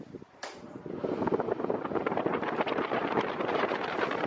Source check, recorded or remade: remade